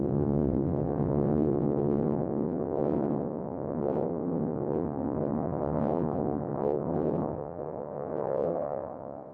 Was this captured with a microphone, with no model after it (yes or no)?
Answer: no